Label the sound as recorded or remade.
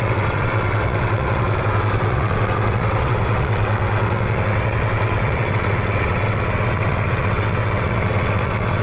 remade